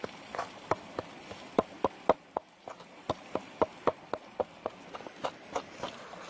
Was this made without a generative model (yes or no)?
yes